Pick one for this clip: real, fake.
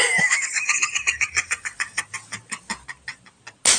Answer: real